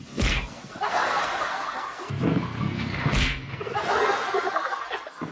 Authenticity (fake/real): fake